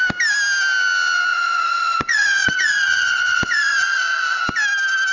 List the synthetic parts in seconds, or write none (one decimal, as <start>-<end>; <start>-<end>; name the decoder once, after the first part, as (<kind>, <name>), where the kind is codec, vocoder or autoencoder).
1.3-4.4 (vocoder, Vocos)